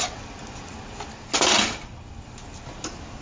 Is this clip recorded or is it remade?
recorded